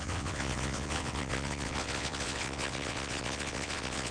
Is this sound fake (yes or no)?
yes